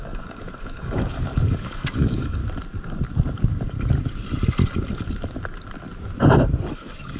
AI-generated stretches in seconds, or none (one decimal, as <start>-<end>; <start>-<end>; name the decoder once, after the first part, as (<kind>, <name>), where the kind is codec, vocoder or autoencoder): 0.0-2.4 (codec, DAC); 6.7-7.2